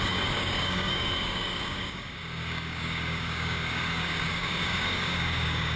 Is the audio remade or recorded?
remade